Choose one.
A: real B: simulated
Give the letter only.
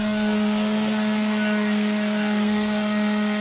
B